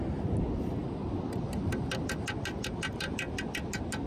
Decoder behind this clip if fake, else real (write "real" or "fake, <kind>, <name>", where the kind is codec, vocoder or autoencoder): real